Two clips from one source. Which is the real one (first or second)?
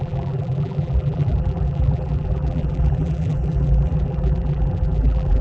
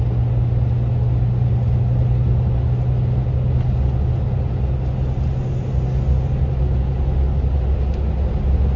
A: second